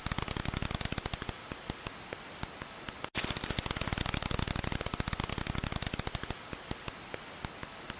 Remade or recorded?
recorded